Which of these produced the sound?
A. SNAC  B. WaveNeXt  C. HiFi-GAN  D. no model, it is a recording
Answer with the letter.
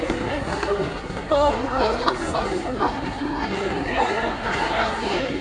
A